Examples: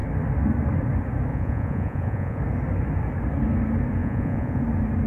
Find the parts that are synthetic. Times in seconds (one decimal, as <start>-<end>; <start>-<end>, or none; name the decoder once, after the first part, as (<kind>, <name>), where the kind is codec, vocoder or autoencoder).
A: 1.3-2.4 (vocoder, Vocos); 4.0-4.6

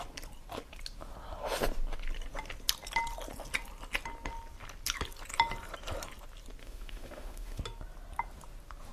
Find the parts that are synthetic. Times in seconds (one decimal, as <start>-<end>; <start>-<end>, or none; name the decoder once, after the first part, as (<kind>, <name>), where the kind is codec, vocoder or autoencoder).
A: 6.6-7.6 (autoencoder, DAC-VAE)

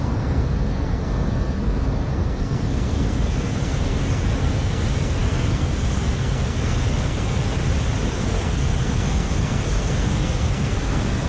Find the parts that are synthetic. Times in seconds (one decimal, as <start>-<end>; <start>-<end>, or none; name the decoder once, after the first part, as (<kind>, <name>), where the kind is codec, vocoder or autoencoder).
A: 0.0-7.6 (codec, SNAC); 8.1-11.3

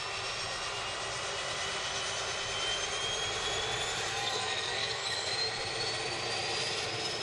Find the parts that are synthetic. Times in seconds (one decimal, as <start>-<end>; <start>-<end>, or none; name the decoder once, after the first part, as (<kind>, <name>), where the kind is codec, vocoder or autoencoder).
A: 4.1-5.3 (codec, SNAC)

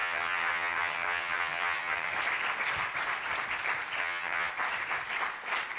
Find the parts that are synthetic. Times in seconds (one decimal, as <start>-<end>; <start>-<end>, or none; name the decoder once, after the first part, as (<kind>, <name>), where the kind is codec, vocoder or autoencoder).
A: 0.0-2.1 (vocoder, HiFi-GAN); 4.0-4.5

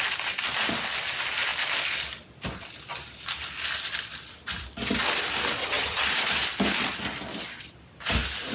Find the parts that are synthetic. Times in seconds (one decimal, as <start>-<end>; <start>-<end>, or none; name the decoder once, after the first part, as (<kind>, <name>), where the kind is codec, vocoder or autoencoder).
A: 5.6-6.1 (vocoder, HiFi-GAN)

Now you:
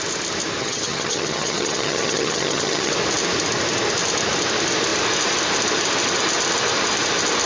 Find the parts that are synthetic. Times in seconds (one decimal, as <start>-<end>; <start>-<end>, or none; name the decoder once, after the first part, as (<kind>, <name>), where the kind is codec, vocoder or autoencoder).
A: 0.6-2.9 (vocoder, HiFi-GAN)

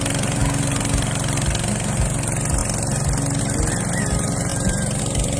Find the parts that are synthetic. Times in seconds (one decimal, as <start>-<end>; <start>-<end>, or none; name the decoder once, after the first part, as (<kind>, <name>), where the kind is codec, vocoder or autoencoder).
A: 4.5-5.0 (vocoder, BigVGAN v2)